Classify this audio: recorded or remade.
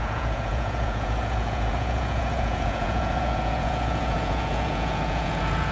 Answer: remade